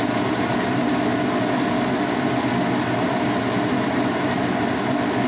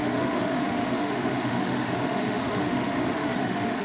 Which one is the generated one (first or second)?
second